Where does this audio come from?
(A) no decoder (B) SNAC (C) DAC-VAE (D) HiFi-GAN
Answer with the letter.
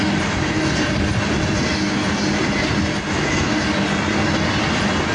A